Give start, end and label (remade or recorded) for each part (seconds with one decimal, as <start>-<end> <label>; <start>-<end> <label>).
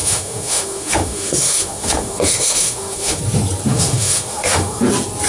0.0-3.2 remade; 3.2-3.7 recorded; 3.7-4.8 remade; 4.8-5.3 recorded